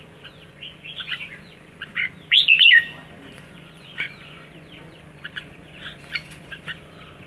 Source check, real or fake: fake